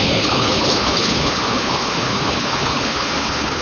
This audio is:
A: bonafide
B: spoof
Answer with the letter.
B